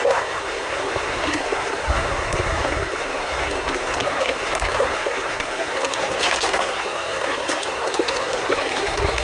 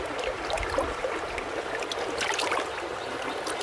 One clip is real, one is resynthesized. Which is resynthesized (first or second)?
first